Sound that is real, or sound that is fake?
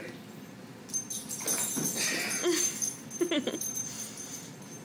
real